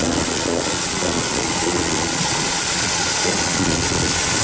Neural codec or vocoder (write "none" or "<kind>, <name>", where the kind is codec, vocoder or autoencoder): vocoder, Vocos